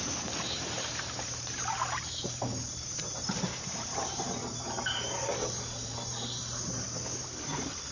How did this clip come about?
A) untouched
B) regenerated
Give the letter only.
B